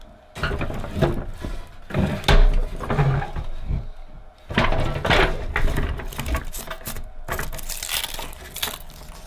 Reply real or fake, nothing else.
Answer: real